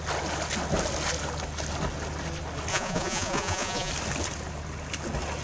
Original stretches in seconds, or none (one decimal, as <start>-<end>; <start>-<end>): 0.0-2.7; 3.9-5.4